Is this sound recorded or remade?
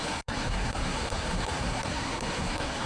remade